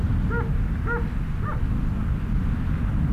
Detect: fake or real real